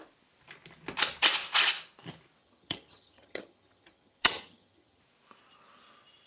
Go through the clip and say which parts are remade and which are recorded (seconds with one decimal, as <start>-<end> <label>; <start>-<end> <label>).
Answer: 0.0-2.4 recorded; 2.4-5.0 remade; 5.0-6.3 recorded